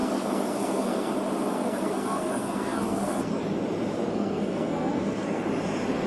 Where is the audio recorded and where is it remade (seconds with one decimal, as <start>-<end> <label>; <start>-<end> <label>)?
0.0-1.1 remade; 1.1-1.5 recorded; 1.5-3.4 remade; 3.4-4.1 recorded; 4.1-5.4 remade; 5.4-6.1 recorded